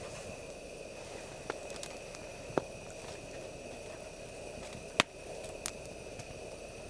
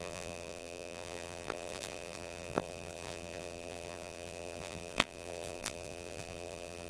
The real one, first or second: first